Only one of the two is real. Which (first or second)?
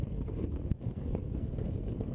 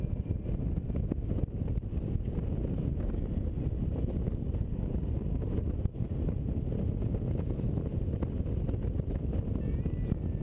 second